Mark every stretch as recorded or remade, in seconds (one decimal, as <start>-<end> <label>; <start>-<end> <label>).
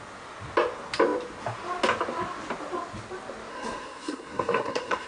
0.0-3.5 recorded; 3.5-5.1 remade